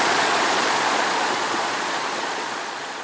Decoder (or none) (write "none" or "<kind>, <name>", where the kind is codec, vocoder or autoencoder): vocoder, Vocos